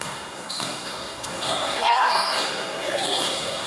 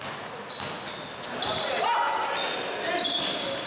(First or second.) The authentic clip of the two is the second